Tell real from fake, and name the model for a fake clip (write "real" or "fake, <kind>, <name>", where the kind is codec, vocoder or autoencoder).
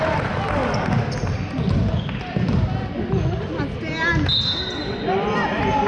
real